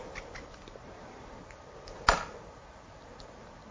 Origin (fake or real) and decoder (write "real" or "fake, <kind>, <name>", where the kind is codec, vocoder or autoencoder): real